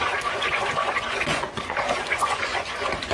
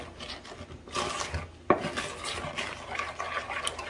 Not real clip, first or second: first